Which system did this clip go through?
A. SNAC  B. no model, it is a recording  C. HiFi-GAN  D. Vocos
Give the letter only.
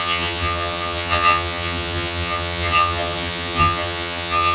C